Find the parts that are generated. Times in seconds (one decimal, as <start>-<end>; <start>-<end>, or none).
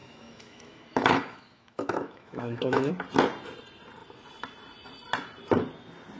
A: 0.0-2.9